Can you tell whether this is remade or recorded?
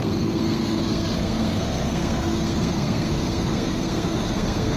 remade